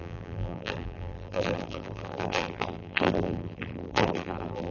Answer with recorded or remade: remade